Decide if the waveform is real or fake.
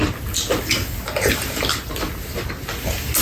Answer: real